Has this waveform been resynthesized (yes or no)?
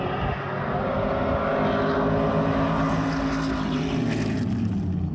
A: no